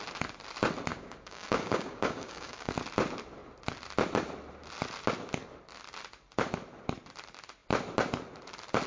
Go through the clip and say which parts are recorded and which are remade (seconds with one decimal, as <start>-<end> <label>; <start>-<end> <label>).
0.0-0.9 recorded; 0.9-2.7 remade; 2.7-8.9 recorded